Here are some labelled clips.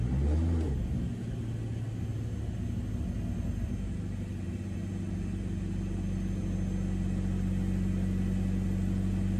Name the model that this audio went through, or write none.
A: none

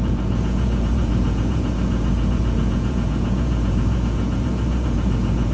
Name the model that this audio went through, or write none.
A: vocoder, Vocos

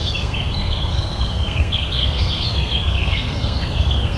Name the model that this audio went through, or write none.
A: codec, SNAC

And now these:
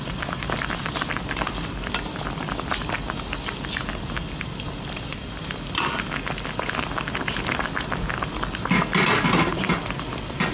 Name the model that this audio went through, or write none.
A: none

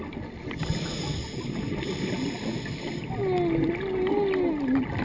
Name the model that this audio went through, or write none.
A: none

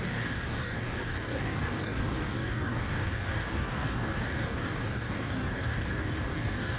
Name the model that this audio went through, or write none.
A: codec, DAC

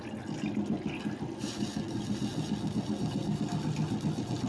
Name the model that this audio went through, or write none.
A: none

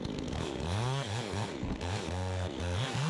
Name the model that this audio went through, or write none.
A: codec, SNAC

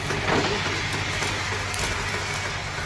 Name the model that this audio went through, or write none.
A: none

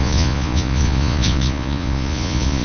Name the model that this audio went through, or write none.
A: vocoder, Vocos